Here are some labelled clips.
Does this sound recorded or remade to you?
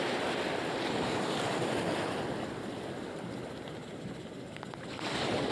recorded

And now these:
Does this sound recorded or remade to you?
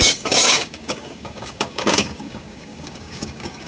remade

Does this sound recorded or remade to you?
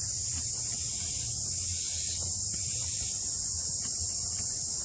recorded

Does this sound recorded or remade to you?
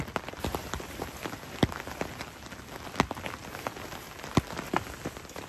recorded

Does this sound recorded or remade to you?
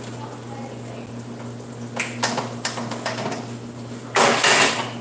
recorded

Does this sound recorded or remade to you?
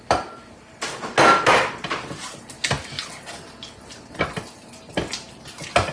recorded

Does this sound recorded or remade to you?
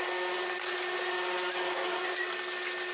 recorded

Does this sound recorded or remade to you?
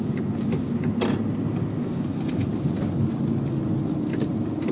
recorded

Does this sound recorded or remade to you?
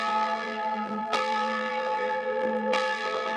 remade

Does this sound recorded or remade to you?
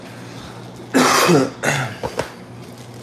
recorded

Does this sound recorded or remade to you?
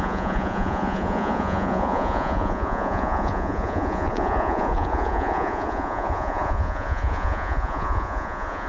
remade